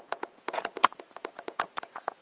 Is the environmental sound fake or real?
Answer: fake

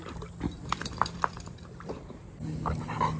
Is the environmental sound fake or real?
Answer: real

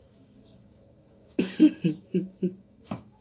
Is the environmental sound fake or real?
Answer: fake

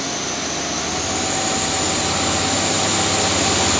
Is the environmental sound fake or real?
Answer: real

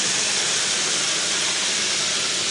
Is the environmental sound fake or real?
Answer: real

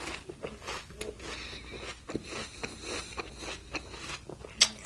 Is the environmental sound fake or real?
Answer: real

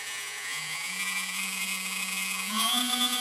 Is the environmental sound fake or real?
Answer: fake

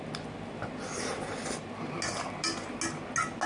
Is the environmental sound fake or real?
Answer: real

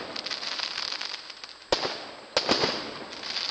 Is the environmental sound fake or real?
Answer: real